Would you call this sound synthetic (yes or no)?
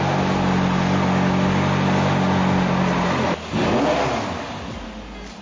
no